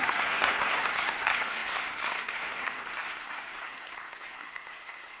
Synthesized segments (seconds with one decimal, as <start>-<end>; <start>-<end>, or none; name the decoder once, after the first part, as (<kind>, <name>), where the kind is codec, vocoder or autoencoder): 0.0-5.2 (codec, SNAC)